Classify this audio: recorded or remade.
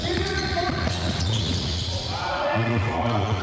remade